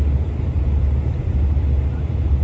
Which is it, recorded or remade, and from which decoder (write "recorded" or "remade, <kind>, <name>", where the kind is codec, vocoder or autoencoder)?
recorded